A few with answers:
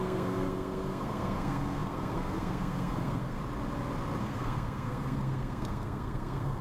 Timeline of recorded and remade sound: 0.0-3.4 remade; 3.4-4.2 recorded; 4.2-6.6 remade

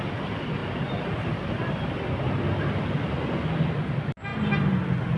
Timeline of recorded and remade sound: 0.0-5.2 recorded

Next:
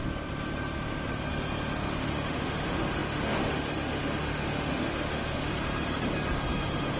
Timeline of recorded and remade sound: 0.0-2.1 recorded; 2.1-5.5 remade; 5.5-7.0 recorded

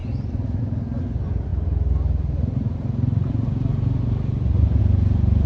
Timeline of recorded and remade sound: 0.0-5.5 recorded

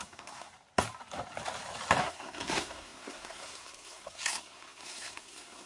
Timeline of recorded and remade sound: 0.0-0.5 remade; 0.5-2.0 recorded; 2.0-5.7 remade

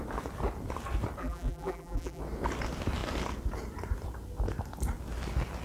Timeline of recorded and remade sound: 0.0-1.2 recorded; 1.2-2.2 remade; 2.2-5.6 recorded

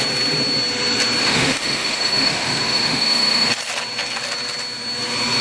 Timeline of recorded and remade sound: 0.0-1.2 recorded; 1.2-3.5 remade; 3.5-5.4 recorded

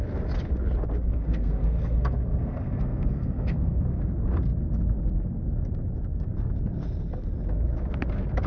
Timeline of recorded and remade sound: 0.0-1.1 recorded; 1.1-4.0 remade; 4.0-8.5 recorded